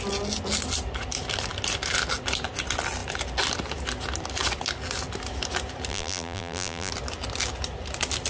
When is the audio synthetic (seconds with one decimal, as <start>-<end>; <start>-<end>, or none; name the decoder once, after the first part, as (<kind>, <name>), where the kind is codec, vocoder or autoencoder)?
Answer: 5.9-6.9 (vocoder, BigVGAN v2)